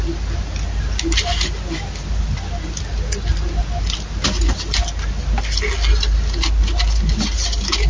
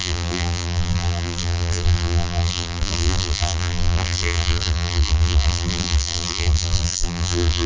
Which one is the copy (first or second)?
second